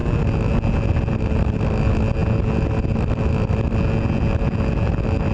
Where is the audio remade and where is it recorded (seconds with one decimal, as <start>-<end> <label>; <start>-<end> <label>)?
0.0-5.3 recorded